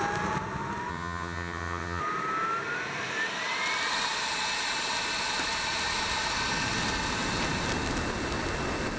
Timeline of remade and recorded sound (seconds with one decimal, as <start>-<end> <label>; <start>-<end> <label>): 0.0-0.9 recorded; 0.9-2.0 remade; 2.0-9.0 recorded